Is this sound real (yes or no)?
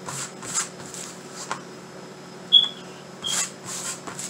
yes